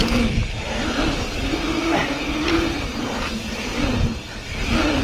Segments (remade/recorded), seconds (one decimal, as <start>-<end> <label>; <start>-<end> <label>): 0.0-5.0 recorded